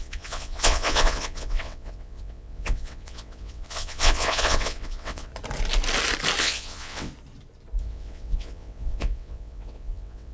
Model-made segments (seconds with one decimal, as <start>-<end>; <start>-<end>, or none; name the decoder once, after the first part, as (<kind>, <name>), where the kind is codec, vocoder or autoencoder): 0.0-5.3 (vocoder, WaveNeXt); 6.4-7.1; 7.8-10.3